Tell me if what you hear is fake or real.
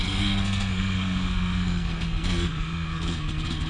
fake